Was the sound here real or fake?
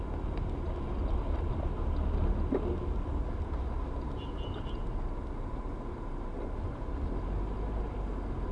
real